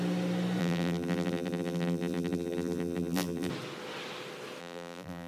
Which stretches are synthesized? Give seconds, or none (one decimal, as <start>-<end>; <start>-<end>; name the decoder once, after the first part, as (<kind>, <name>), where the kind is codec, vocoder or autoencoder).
0.6-3.5 (vocoder, BigVGAN v2); 4.6-5.3